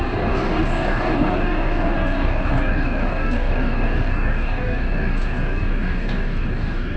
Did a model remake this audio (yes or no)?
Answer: yes